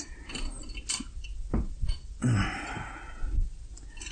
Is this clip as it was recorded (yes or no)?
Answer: yes